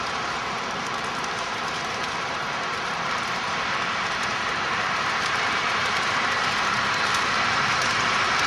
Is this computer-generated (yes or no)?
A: yes